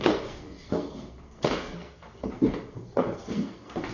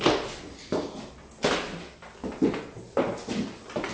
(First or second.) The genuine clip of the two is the second